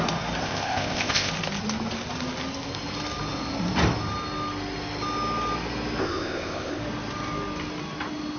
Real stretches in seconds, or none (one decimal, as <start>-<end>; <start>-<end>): 0.0-0.4; 1.3-6.0; 6.8-8.4